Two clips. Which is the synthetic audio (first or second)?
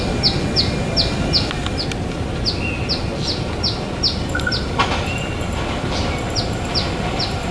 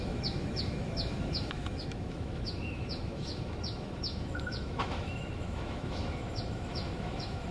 second